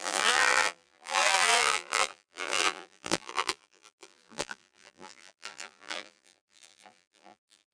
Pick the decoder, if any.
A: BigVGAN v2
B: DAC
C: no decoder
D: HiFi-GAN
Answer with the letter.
A